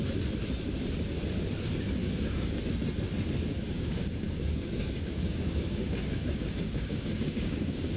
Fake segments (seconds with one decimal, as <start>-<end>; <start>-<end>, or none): 2.0-2.6; 3.5-8.0